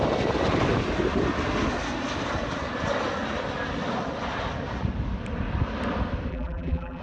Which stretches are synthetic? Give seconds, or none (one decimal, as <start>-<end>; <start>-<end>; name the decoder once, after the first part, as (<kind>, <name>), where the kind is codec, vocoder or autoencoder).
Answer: 6.3-7.0 (vocoder, BigVGAN v2)